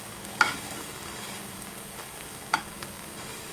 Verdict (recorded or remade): remade